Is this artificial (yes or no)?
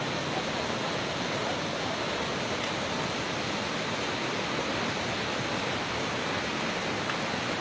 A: no